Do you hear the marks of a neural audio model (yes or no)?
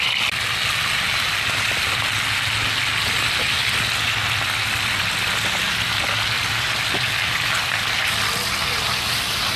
no